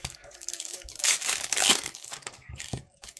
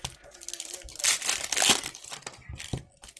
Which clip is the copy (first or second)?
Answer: first